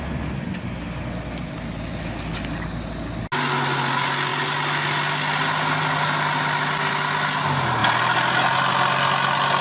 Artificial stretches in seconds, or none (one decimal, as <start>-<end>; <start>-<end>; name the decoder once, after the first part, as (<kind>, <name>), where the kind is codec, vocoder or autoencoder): none